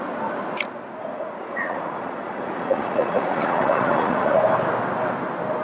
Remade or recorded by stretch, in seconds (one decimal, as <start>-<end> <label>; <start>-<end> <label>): 0.0-1.0 recorded; 1.0-4.4 remade; 4.4-5.6 recorded